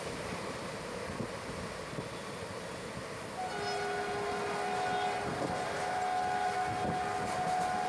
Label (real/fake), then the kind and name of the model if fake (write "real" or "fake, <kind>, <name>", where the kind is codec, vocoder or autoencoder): real